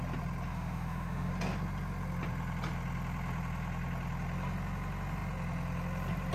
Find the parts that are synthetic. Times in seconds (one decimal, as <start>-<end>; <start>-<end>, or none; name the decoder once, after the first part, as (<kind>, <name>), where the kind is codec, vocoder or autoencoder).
0.5-1.3 (autoencoder, DAC-VAE)